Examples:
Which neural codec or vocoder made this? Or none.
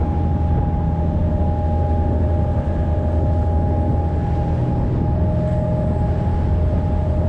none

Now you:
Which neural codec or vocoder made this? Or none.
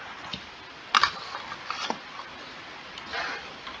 none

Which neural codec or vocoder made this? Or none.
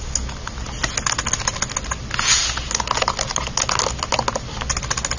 none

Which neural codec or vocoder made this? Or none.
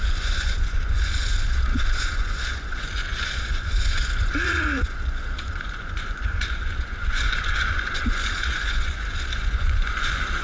vocoder, Vocos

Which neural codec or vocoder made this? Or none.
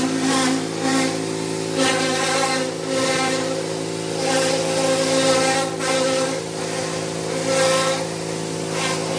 none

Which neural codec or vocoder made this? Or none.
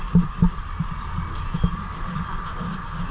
none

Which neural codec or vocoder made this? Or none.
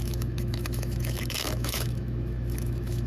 autoencoder, DAC-VAE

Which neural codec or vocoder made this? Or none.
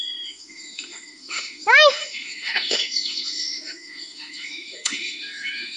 autoencoder, DAC-VAE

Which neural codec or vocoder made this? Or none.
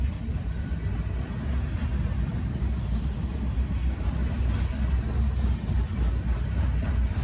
none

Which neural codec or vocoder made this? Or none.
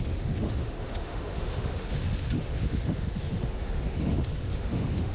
autoencoder, DAC-VAE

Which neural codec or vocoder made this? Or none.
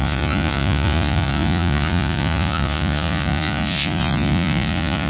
vocoder, Vocos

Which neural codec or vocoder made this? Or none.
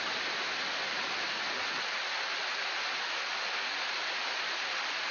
none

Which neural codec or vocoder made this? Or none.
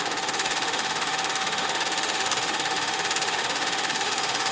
autoencoder, DAC-VAE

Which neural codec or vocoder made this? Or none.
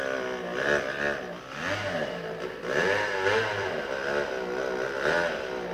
vocoder, BigVGAN v2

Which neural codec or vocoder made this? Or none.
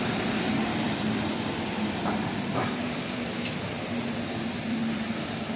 vocoder, BigVGAN v2